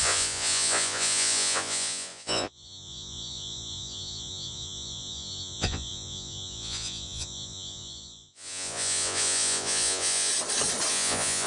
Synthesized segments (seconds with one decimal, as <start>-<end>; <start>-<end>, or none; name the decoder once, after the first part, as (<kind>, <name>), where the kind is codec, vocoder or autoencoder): 0.0-10.3 (vocoder, Vocos); 10.9-11.5